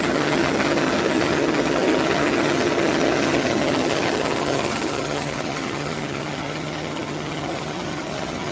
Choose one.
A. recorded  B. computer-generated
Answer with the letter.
B